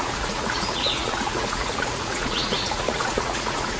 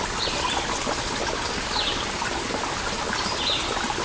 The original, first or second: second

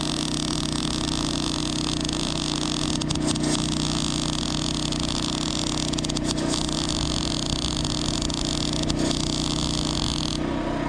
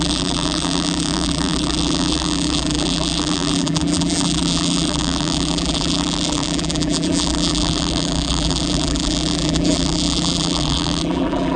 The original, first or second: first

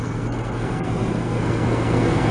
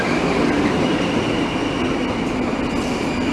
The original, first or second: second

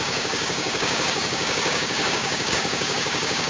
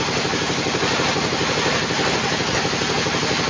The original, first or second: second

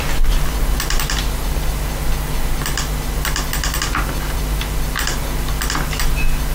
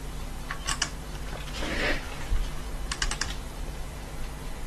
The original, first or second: first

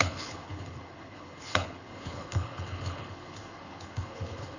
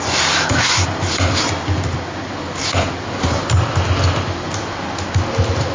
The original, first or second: second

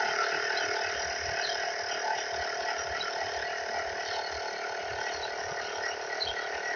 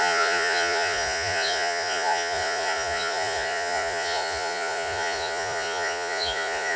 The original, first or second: first